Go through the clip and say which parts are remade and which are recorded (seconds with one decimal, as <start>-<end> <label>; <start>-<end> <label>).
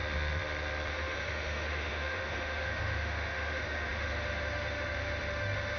0.0-0.9 recorded; 0.9-5.8 remade